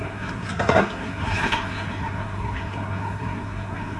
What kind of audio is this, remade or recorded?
remade